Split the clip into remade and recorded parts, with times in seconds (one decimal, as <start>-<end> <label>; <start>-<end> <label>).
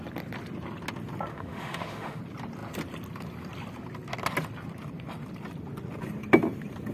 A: 0.0-1.3 recorded; 1.3-2.2 remade; 2.2-6.9 recorded